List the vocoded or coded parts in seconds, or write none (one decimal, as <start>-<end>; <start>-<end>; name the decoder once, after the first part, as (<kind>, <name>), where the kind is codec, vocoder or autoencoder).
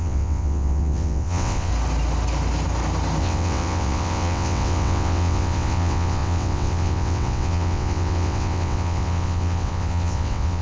0.0-1.7 (vocoder, WaveNeXt); 3.2-10.6